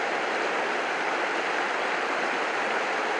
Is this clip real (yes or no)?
yes